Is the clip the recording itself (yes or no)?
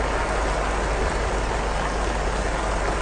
yes